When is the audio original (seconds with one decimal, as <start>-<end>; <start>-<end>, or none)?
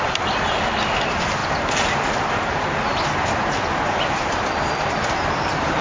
0.0-5.8